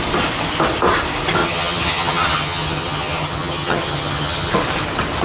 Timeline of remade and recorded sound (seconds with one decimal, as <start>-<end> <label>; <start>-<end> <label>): 0.0-1.4 recorded; 1.4-4.5 remade; 4.5-5.2 recorded